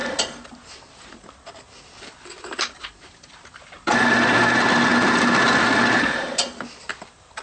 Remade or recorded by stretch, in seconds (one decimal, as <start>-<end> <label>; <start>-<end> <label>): 0.0-7.4 recorded